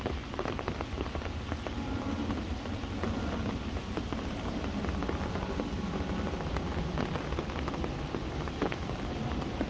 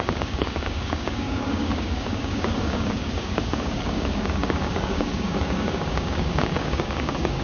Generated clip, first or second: second